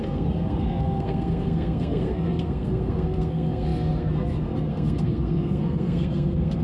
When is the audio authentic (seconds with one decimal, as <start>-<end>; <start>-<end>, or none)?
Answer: none